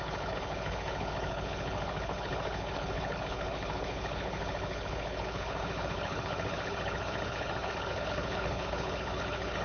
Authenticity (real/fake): fake